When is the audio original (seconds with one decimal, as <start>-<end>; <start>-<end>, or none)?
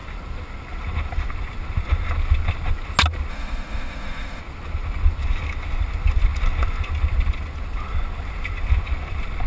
0.0-3.3; 4.4-9.5